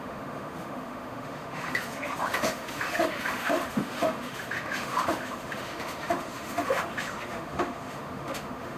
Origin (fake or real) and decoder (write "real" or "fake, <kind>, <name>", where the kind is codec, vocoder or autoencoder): fake, autoencoder, DAC-VAE